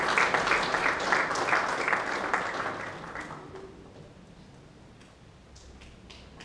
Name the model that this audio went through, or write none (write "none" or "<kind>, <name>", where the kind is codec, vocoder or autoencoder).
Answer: none